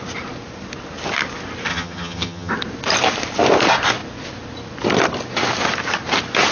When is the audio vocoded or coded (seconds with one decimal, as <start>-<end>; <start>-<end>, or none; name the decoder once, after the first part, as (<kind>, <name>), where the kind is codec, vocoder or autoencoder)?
1.7-2.5 (vocoder, HiFi-GAN)